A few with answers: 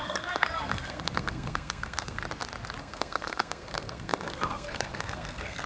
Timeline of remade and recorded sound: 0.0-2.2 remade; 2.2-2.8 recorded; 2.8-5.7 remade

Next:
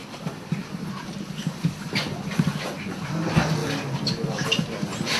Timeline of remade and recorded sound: 0.0-5.2 recorded

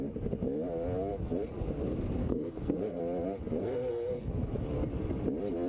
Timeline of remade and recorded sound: 0.0-2.2 recorded; 2.2-3.0 remade; 3.0-3.6 recorded; 3.6-4.3 remade; 4.3-5.7 recorded

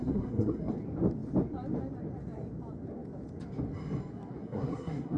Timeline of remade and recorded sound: 0.0-0.7 remade; 0.7-4.4 recorded; 4.4-5.2 remade

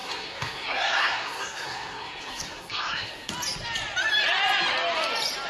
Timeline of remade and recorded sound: 0.0-3.3 remade; 3.3-5.5 recorded

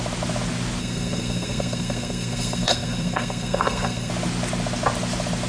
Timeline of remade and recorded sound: 0.0-0.8 recorded; 0.8-4.1 remade; 4.1-5.5 recorded